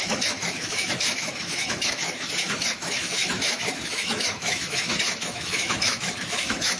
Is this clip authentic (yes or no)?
no